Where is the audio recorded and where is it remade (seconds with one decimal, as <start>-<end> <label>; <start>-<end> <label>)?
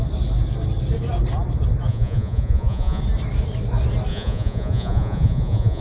0.0-1.9 recorded; 1.9-3.0 remade; 3.0-4.1 recorded; 4.1-5.8 remade